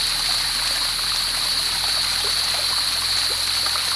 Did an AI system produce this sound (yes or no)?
no